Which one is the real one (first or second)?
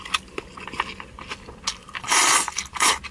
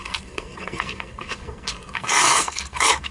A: first